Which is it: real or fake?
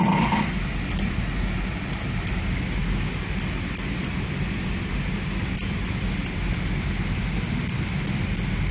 real